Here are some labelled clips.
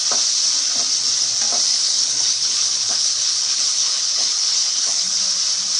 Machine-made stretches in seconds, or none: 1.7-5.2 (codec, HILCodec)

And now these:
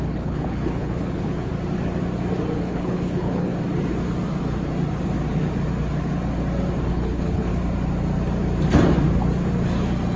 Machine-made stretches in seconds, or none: 0.0-1.5 (codec, HILCodec); 2.6-3.5; 6.9-7.5